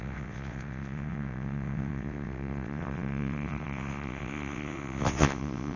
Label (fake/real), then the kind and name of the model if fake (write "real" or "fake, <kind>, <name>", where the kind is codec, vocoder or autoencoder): fake, vocoder, WaveNeXt